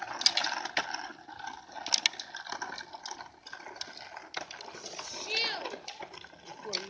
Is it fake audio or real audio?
real